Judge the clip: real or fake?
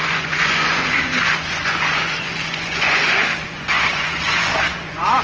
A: fake